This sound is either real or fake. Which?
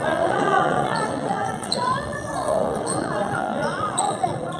fake